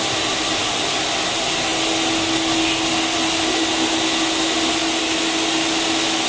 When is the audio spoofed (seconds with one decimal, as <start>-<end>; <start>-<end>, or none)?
none